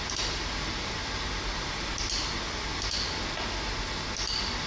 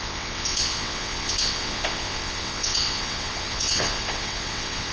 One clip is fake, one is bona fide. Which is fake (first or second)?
second